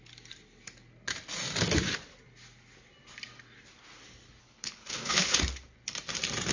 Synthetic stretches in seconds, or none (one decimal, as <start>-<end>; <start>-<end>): 4.4-5.4